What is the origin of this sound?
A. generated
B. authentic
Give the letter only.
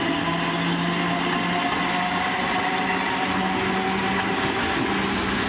B